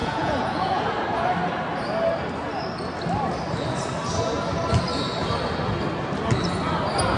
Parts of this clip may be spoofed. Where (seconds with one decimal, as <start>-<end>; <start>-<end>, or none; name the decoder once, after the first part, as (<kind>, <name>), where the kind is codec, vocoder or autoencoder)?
0.0-0.8 (vocoder, Vocos)

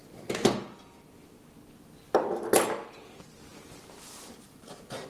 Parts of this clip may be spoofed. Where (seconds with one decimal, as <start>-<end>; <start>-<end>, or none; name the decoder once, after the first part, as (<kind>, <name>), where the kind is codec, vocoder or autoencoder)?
3.5-5.1 (vocoder, BigVGAN v2)

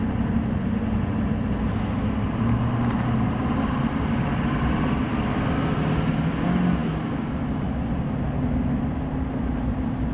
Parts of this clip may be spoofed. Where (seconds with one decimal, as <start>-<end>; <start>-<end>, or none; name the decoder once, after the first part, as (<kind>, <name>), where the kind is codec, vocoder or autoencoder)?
none

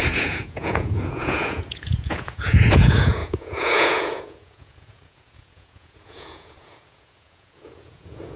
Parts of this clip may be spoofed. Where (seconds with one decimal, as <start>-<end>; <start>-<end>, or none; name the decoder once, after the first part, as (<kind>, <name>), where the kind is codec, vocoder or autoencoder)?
0.0-8.4 (vocoder, Vocos)

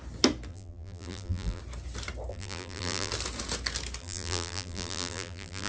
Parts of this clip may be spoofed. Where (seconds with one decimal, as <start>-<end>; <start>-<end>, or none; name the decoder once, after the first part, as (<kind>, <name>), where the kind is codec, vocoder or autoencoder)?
0.5-1.6 (vocoder, BigVGAN v2); 2.3-3.1; 4.0-5.7